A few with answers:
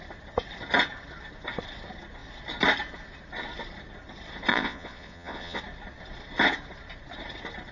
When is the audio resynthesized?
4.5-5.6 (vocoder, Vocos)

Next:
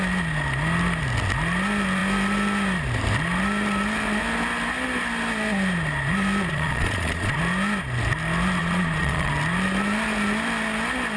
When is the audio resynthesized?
6.5-7.4 (vocoder, Vocos); 8.6-9.3

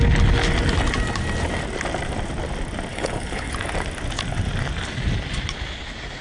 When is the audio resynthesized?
2.9-3.5 (codec, HILCodec)